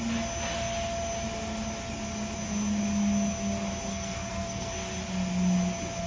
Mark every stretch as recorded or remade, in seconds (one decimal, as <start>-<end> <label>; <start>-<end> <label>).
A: 0.0-3.9 recorded; 3.9-4.7 remade; 4.7-6.1 recorded